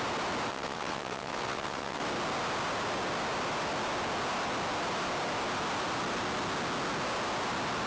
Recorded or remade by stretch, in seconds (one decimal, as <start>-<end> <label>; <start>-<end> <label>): 0.0-0.5 recorded; 0.5-2.0 remade; 2.0-7.9 recorded